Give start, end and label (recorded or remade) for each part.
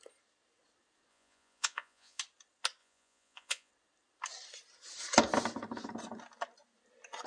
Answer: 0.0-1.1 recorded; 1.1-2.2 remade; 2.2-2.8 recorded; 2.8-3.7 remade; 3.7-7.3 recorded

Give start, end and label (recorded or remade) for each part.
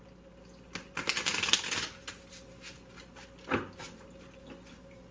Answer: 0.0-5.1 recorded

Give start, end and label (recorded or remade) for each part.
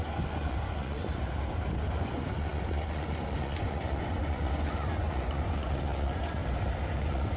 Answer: 0.0-1.0 remade; 1.0-2.0 recorded; 2.0-6.4 remade; 6.4-7.0 recorded; 7.0-7.4 remade